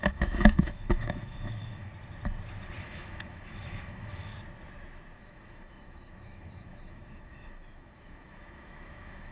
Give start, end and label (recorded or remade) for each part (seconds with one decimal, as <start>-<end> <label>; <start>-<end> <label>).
0.0-1.9 remade; 1.9-2.8 recorded; 2.8-4.3 remade; 4.3-5.2 recorded; 5.2-9.3 remade